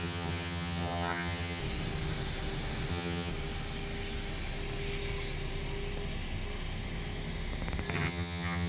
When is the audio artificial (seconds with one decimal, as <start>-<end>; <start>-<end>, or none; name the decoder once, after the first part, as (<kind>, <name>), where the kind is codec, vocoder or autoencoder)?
0.0-1.6 (vocoder, HiFi-GAN); 2.9-3.3; 7.9-8.7

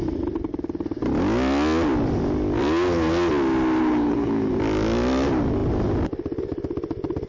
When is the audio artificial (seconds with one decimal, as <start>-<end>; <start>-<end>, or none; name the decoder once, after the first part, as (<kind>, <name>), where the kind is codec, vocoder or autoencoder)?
3.8-4.5 (codec, HILCodec)

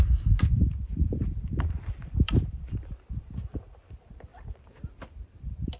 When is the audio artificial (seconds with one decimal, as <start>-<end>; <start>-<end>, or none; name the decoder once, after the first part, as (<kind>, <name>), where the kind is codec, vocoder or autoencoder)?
0.0-5.8 (vocoder, BigVGAN v2)

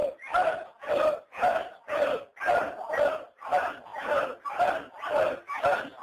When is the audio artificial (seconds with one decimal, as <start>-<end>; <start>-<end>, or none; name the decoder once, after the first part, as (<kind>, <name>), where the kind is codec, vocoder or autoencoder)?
none

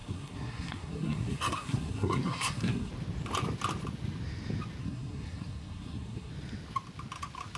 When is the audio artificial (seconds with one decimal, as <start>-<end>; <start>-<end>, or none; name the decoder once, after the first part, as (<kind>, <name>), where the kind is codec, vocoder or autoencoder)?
0.0-2.9 (codec, SNAC); 4.8-6.3